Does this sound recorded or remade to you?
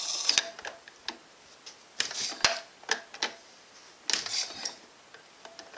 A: recorded